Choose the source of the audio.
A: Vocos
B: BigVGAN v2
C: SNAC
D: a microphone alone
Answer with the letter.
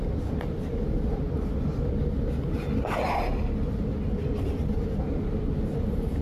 D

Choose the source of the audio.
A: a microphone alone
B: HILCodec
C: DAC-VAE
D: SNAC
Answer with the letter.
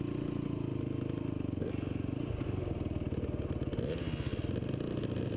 A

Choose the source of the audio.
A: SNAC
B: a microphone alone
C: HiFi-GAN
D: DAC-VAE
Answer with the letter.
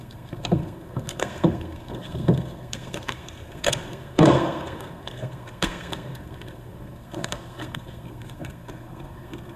A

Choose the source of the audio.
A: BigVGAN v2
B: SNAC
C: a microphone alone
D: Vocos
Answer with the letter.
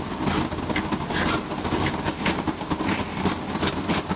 C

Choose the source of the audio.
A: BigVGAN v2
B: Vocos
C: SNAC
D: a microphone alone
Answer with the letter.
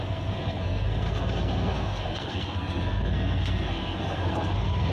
C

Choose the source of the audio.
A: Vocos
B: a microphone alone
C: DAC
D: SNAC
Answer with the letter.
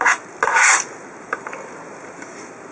B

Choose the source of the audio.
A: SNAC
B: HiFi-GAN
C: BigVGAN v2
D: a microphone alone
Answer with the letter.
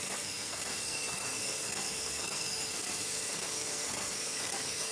A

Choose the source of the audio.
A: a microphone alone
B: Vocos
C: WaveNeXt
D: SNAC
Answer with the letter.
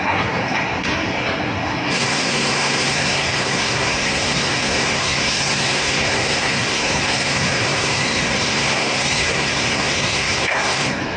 D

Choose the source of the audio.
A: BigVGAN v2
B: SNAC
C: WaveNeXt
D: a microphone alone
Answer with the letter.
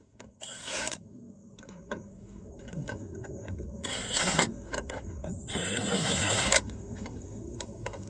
B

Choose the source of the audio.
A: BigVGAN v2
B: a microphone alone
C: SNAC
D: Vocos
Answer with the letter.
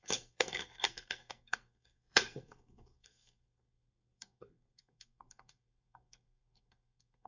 C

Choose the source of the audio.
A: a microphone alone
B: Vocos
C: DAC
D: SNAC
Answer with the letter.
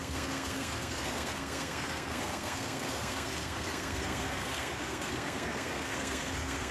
D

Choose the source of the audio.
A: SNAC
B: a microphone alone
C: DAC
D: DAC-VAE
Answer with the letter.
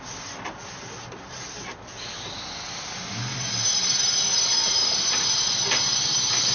B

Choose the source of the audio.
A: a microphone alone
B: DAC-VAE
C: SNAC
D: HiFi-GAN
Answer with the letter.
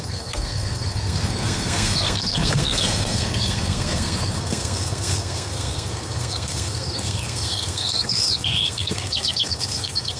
C